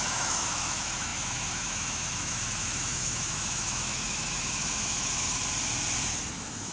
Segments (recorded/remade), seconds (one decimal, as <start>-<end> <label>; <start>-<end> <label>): 0.0-5.4 remade; 5.4-6.3 recorded; 6.3-6.7 remade